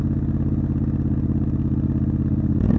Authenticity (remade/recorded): recorded